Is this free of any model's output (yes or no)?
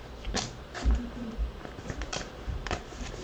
no